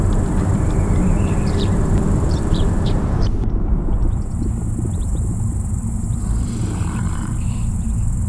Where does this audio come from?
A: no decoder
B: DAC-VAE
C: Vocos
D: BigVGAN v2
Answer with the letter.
D